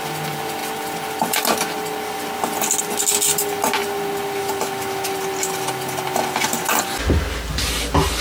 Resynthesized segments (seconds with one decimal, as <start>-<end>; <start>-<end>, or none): none